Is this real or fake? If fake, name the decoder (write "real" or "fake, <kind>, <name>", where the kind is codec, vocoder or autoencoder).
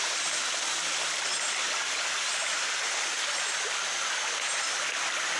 real